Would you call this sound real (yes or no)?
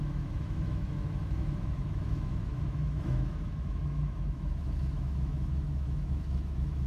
no